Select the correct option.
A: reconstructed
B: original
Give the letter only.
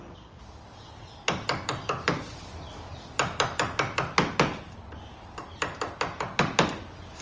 B